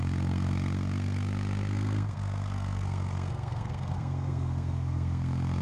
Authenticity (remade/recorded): remade